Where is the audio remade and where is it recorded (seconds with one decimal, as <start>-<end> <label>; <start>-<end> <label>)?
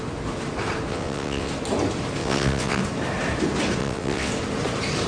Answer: 0.0-0.9 recorded; 0.9-1.5 remade; 1.5-2.2 recorded; 2.2-2.8 remade; 2.8-3.8 recorded; 3.8-4.3 remade; 4.3-5.1 recorded